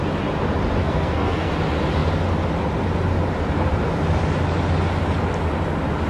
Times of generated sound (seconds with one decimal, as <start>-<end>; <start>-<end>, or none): 0.8-1.5